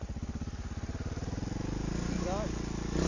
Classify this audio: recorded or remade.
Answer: recorded